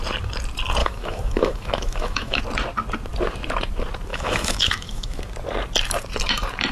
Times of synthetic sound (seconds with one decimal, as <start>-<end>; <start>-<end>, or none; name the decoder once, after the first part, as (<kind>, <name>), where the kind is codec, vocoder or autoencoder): 0.8-2.4 (autoencoder, DAC-VAE); 4.1-5.2